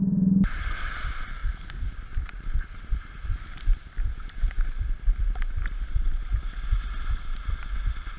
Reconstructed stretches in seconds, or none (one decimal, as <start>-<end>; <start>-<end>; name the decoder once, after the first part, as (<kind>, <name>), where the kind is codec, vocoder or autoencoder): none